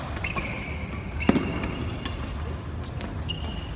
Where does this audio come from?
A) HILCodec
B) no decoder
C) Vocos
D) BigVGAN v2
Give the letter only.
B